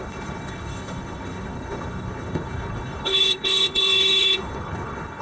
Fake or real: fake